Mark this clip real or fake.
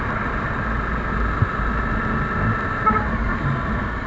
real